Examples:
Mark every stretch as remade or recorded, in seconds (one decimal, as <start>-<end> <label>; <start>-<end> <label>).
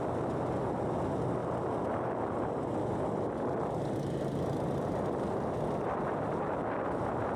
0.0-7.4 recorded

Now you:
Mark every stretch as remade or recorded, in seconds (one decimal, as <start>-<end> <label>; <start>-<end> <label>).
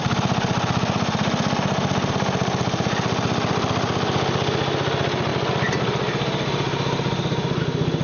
0.0-8.0 recorded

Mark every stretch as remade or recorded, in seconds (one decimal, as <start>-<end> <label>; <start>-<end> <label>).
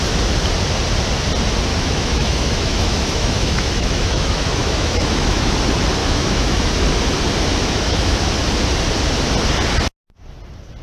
0.0-1.7 recorded; 1.7-5.5 remade; 5.5-6.0 recorded; 6.0-6.7 remade; 6.7-7.5 recorded; 7.5-8.2 remade; 8.2-10.8 recorded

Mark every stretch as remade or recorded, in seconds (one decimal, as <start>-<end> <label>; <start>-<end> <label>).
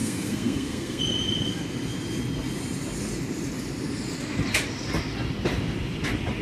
0.0-1.0 remade; 1.0-6.4 recorded